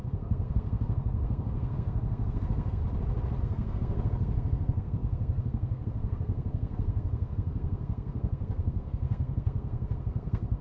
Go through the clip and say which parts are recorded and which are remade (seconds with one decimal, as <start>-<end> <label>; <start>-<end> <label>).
0.0-2.8 remade; 2.8-3.4 recorded; 3.4-10.6 remade